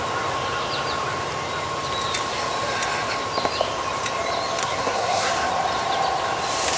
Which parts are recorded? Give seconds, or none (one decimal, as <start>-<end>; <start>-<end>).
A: 0.0-4.6; 5.3-6.8